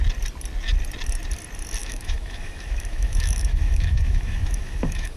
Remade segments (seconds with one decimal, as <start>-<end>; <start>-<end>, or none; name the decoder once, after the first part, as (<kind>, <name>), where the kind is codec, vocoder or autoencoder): 1.8-5.2 (autoencoder, DAC-VAE)